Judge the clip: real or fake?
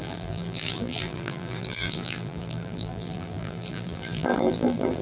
fake